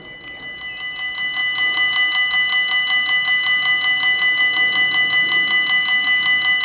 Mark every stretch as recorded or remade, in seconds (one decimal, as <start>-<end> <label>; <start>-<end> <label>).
0.0-6.6 recorded